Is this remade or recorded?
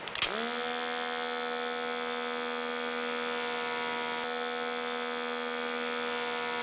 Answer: recorded